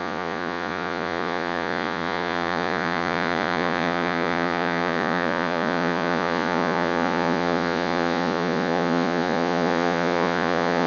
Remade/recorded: remade